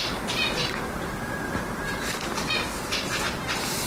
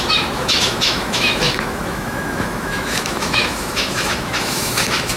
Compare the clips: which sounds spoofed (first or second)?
second